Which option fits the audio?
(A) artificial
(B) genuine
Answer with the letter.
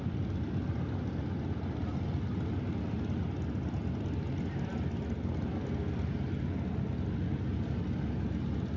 B